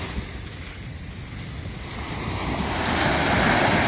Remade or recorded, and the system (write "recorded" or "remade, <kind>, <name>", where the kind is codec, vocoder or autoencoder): recorded